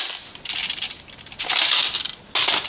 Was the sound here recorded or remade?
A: recorded